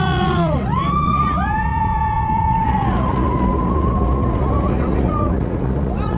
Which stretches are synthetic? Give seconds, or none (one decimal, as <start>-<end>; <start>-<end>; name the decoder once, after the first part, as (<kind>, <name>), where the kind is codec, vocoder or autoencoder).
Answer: 0.0-6.2 (vocoder, Vocos)